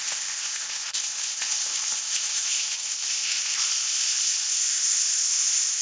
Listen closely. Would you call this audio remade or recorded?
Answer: remade